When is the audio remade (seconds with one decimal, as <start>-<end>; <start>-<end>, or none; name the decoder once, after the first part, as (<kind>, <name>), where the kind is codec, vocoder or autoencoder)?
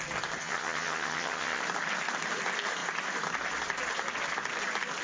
0.4-1.6 (vocoder, HiFi-GAN)